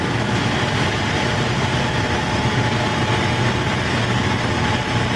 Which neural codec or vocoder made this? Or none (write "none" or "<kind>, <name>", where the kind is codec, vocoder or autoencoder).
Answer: none